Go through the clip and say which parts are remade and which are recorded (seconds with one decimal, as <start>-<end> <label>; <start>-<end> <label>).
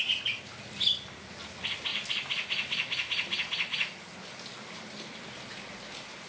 0.0-6.3 recorded